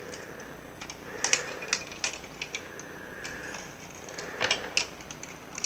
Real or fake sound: real